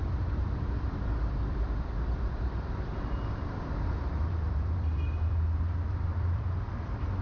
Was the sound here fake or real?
fake